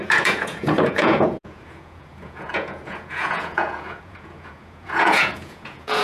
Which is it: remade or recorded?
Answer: remade